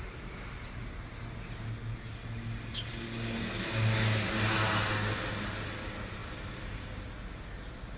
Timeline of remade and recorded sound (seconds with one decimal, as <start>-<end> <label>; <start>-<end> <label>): 0.0-8.0 recorded